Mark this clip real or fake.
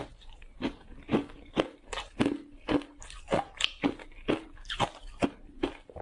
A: real